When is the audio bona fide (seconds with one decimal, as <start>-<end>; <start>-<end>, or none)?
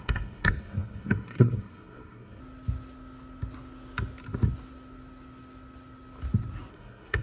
2.4-6.7